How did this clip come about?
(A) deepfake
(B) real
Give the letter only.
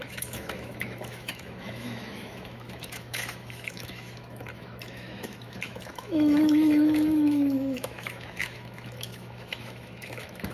A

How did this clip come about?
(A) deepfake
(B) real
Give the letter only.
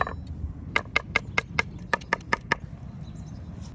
B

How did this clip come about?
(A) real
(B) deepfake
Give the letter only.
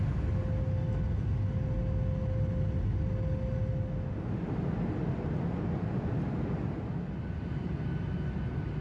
A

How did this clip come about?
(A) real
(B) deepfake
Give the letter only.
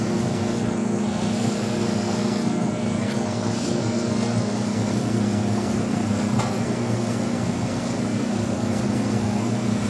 B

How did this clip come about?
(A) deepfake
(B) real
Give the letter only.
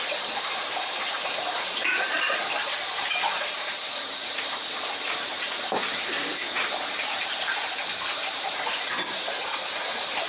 A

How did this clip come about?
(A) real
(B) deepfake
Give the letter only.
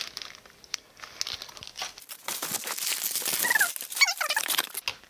A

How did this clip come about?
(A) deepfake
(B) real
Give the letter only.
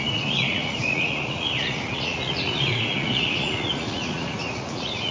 A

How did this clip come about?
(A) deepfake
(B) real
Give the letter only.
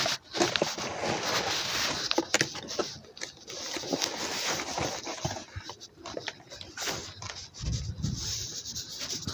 B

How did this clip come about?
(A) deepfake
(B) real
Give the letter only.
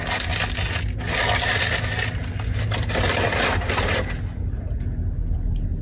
B